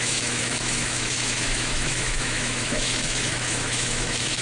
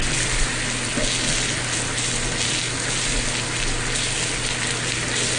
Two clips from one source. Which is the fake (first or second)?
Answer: first